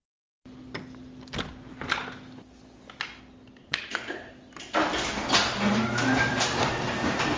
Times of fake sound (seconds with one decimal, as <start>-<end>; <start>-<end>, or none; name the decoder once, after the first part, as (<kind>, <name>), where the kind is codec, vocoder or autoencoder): 3.6-4.3 (vocoder, Vocos)